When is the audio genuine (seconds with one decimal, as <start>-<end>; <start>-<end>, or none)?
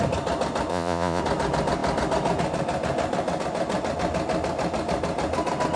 0.0-0.7; 1.2-5.8